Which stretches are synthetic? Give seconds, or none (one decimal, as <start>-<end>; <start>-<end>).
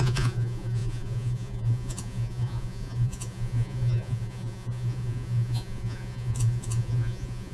0.0-7.5